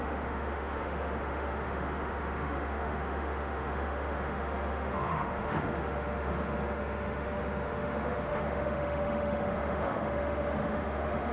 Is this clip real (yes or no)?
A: no